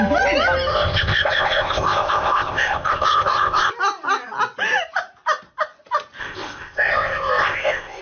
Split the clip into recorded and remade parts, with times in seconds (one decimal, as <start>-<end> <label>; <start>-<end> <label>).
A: 0.0-0.7 recorded; 0.7-3.7 remade; 3.7-6.2 recorded; 6.2-8.0 remade